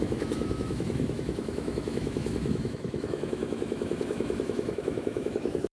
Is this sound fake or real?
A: fake